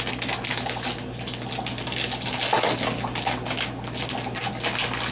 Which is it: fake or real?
real